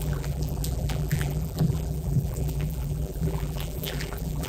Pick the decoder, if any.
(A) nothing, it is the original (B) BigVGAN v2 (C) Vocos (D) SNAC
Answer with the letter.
B